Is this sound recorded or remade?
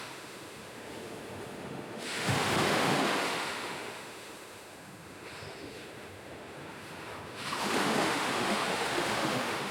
remade